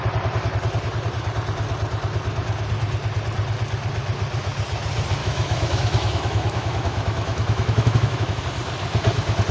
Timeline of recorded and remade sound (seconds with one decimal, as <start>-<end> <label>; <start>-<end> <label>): 0.0-5.2 recorded; 5.2-8.4 remade; 8.4-9.5 recorded